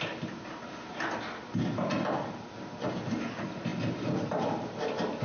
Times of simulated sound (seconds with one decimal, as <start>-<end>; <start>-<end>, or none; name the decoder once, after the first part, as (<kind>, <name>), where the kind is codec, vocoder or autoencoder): none